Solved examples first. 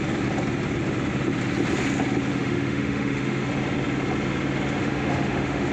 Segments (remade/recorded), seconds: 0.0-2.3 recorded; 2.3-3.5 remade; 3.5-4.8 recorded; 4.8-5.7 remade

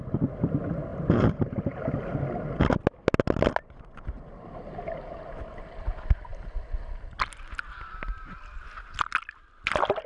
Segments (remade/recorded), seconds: 0.0-10.1 recorded

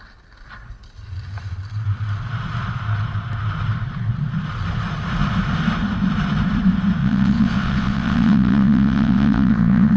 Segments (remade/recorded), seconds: 0.0-7.0 recorded; 7.0-10.0 remade